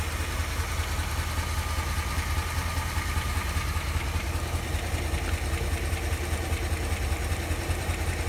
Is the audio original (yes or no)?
yes